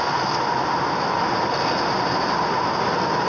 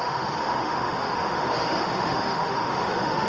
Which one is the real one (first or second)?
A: first